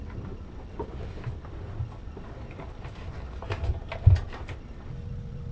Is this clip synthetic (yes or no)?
yes